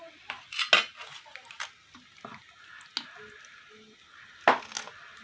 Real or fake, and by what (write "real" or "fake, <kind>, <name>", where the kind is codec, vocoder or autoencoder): real